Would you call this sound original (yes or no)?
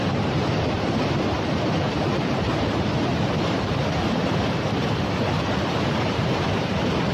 no